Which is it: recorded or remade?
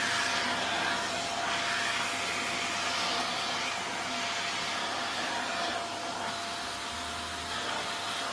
recorded